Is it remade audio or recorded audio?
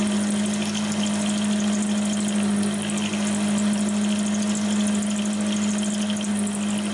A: recorded